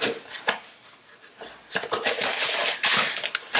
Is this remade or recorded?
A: recorded